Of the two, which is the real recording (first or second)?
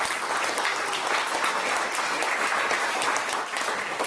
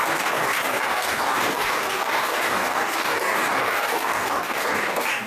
first